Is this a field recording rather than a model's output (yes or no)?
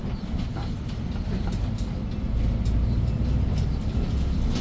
yes